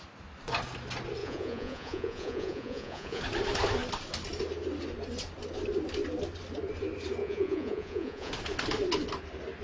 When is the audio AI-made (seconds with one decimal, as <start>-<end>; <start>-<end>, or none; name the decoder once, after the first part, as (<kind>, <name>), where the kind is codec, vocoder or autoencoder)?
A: 1.2-3.2 (vocoder, Vocos); 7.2-8.3